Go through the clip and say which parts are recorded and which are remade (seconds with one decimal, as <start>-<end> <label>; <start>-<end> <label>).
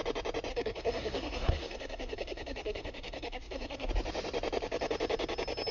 0.0-0.5 recorded; 0.5-3.9 remade; 3.9-5.7 recorded